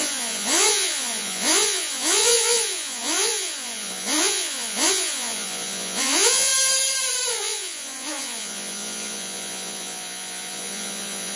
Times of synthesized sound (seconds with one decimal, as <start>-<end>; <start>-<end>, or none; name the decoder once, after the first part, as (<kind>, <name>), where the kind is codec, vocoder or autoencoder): 0.0-6.5 (vocoder, Vocos); 7.3-11.4